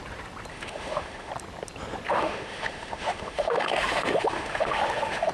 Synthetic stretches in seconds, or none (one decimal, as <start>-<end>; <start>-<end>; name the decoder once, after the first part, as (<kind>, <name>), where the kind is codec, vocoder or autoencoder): 0.5-1.3 (autoencoder, DAC-VAE); 2.1-5.3